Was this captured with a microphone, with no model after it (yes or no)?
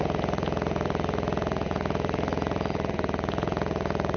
no